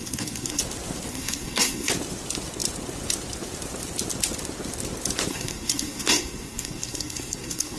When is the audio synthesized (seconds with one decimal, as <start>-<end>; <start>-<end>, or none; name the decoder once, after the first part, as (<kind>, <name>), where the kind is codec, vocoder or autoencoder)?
0.0-0.6 (codec, SNAC); 1.1-1.9; 5.3-7.8

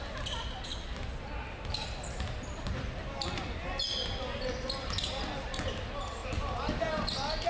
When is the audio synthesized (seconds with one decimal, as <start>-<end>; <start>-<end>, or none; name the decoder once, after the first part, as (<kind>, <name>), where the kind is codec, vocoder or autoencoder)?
none